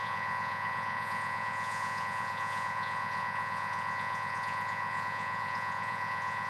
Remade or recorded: remade